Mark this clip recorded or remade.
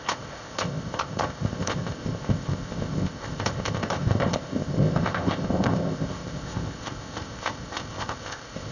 remade